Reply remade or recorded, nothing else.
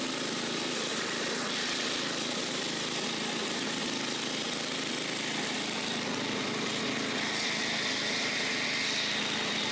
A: recorded